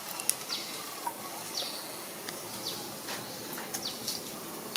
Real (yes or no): yes